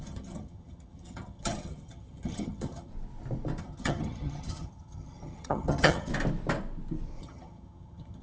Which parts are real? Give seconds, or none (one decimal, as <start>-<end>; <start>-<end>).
2.9-3.6; 6.1-7.2